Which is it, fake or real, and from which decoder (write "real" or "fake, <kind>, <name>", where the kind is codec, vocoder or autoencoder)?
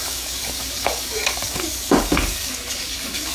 fake, codec, DAC